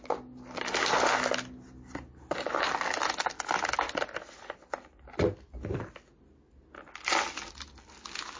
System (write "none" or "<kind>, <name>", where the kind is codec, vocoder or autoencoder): none